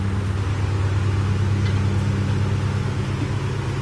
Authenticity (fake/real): real